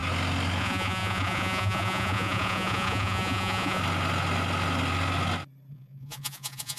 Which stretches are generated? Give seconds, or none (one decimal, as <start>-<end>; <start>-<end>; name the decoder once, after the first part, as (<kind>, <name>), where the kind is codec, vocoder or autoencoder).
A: 0.6-3.8 (vocoder, Vocos); 5.7-6.8